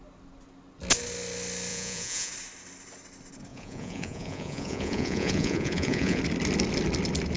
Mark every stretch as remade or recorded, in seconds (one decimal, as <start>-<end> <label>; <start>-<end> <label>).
0.0-1.7 recorded; 1.7-2.3 remade; 2.3-3.5 recorded; 3.5-6.2 remade; 6.2-7.4 recorded